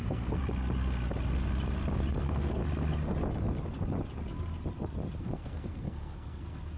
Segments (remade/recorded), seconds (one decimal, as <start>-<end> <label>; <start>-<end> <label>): 0.0-0.4 remade; 0.4-2.2 recorded; 2.2-2.6 remade; 2.6-5.2 recorded; 5.2-6.8 remade